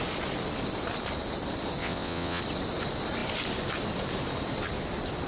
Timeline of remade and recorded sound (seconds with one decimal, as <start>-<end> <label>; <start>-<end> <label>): 0.0-1.8 recorded; 1.8-2.4 remade; 2.4-5.3 recorded

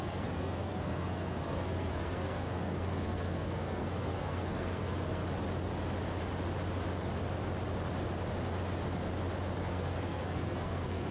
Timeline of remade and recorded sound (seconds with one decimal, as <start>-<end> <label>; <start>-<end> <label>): 0.0-5.2 remade; 5.2-9.6 recorded; 9.6-11.1 remade

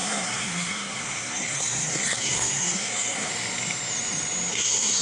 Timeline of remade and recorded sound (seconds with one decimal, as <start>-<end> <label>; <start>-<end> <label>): 0.0-3.3 remade; 3.3-4.5 recorded; 4.5-5.0 remade

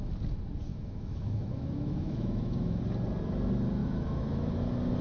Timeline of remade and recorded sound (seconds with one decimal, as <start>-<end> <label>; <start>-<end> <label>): 0.0-0.7 recorded; 0.7-2.8 remade; 2.8-3.8 recorded; 3.8-4.5 remade; 4.5-5.0 recorded